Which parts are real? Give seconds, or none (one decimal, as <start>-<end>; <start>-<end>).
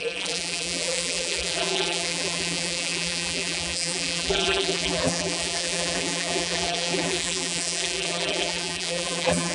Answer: none